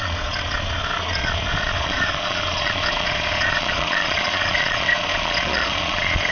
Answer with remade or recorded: remade